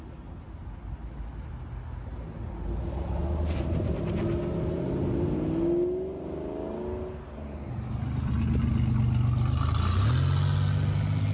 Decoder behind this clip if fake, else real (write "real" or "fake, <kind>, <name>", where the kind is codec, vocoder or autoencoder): real